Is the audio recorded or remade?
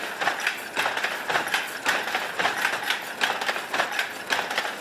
recorded